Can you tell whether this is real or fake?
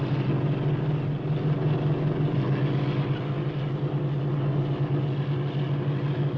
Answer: real